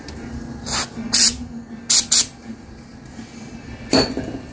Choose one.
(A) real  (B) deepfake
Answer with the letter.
A